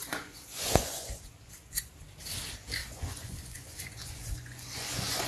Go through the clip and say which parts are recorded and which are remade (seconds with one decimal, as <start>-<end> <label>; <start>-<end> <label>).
0.0-1.9 remade; 1.9-2.8 recorded; 2.8-5.3 remade